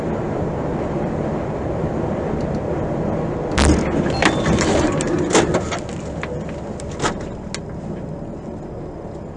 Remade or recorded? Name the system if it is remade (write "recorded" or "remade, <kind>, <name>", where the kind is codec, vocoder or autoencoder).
recorded